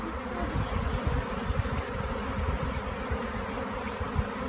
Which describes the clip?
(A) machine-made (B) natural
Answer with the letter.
B